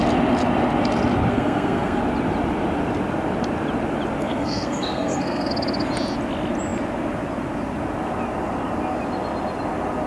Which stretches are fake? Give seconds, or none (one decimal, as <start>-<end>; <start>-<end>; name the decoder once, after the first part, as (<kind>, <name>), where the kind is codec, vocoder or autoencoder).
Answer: 1.3-2.0 (codec, SNAC); 4.2-5.5

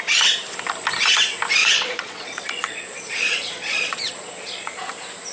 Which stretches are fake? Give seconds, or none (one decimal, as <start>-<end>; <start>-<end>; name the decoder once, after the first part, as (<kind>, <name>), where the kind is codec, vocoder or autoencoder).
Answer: 1.6-4.8 (vocoder, Vocos)

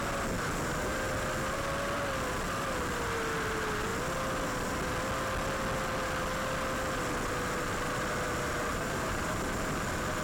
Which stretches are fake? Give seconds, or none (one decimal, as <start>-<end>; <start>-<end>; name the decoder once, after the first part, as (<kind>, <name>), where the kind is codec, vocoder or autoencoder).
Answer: 8.7-9.3 (vocoder, BigVGAN v2)

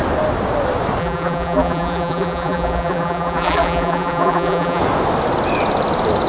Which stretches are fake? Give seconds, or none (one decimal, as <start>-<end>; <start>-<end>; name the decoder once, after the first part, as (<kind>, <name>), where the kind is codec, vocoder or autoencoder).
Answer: 1.0-4.8 (vocoder, BigVGAN v2)

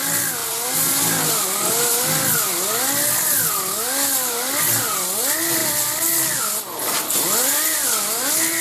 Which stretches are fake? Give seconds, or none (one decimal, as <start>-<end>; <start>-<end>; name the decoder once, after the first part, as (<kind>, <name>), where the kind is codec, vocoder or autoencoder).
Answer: none

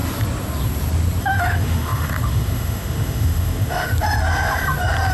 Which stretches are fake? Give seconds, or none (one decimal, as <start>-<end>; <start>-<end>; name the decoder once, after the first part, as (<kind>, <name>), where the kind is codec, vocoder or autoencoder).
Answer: 1.2-3.9 (autoencoder, DAC-VAE)

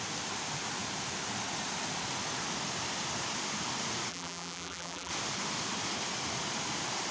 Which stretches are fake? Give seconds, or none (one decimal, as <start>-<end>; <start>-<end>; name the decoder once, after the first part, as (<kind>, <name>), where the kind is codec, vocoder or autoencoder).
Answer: 4.1-5.1 (vocoder, BigVGAN v2)

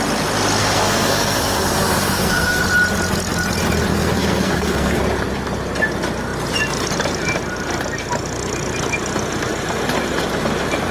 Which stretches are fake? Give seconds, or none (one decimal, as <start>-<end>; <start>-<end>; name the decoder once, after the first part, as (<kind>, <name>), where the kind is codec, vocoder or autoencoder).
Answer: 0.6-2.6 (codec, SNAC); 3.9-5.0